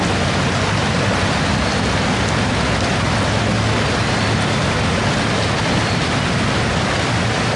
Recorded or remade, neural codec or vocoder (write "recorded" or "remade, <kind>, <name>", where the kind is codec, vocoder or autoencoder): recorded